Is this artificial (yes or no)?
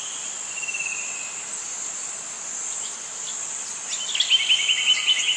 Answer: no